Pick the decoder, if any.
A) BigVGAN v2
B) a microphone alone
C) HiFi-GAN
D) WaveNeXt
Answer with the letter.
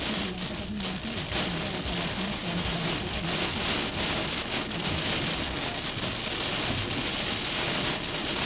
B